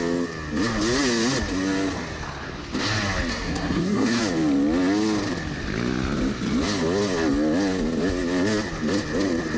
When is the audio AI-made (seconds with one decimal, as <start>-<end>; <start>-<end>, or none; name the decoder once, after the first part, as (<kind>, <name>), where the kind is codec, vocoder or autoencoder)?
3.3-4.2 (codec, SNAC)